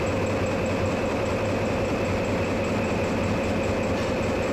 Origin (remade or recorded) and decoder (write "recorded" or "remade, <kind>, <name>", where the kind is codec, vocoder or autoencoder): recorded